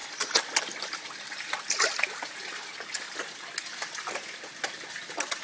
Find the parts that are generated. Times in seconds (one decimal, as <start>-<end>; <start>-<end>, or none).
0.0-3.2